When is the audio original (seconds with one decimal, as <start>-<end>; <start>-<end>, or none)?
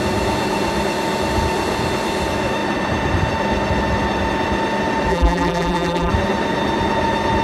0.0-5.1; 6.1-7.4